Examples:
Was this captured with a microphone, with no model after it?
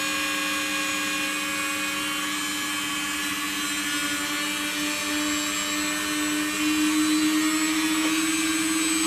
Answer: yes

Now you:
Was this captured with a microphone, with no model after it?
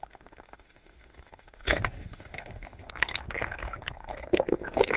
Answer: no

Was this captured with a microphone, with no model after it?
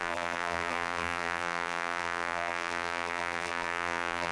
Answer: no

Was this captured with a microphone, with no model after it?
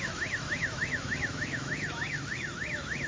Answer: no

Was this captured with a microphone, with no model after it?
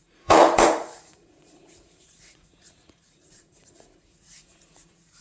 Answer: no